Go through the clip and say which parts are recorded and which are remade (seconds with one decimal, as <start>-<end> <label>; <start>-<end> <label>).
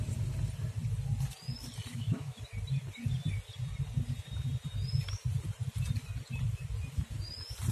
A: 0.0-1.9 recorded; 1.9-2.4 remade; 2.4-7.7 recorded